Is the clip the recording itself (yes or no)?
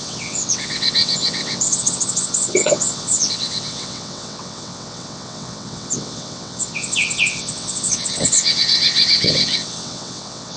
no